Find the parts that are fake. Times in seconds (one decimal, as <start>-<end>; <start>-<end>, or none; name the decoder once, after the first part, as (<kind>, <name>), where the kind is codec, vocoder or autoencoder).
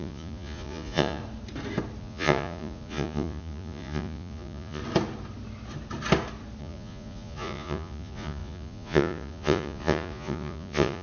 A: 0.0-1.2 (vocoder, Vocos); 2.0-4.8; 6.6-11.0